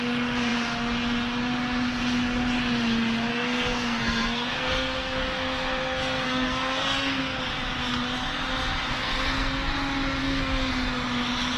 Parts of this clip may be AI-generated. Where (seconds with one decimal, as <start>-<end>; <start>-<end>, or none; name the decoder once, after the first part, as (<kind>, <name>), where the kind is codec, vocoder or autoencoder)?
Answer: 3.3-7.4 (codec, SNAC); 8.9-9.7; 10.2-10.7